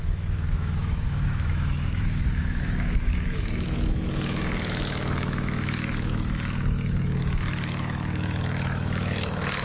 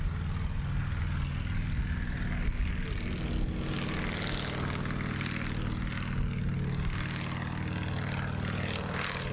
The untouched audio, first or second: second